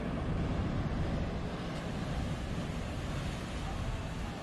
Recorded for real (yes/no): yes